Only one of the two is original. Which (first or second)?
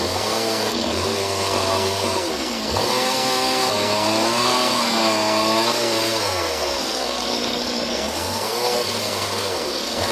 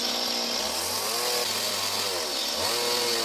second